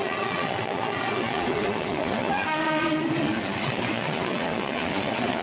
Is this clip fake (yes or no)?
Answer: yes